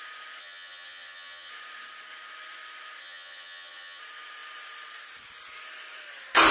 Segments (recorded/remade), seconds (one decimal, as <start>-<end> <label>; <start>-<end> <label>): 0.0-0.4 recorded; 0.4-1.5 remade; 1.5-3.0 recorded; 3.0-4.0 remade; 4.0-6.5 recorded